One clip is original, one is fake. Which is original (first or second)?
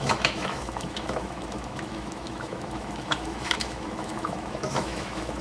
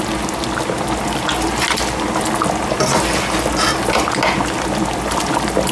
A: second